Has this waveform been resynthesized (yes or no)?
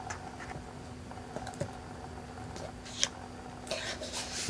no